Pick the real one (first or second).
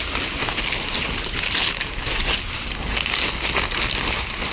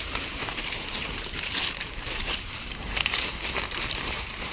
first